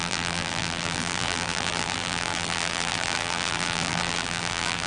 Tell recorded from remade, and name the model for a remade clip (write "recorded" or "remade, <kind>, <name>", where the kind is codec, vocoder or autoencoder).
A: remade, vocoder, BigVGAN v2